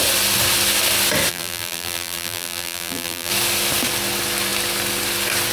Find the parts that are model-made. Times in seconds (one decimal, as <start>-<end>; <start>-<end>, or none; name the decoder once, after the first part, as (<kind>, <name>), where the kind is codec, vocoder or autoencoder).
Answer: 1.3-3.3 (vocoder, BigVGAN v2)